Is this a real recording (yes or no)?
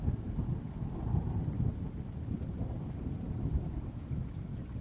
yes